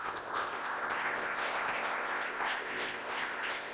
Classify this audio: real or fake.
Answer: fake